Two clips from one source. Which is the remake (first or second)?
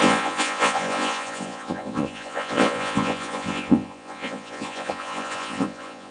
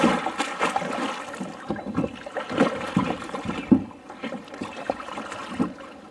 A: first